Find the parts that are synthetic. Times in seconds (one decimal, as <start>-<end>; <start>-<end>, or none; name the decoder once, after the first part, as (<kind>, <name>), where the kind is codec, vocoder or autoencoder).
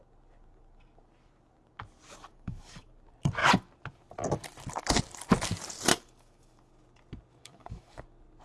2.3-2.9 (codec, DAC); 5.9-6.7; 7.3-8.0